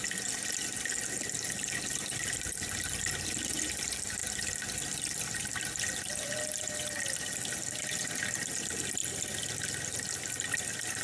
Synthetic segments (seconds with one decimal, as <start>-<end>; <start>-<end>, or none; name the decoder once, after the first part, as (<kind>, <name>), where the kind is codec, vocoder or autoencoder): none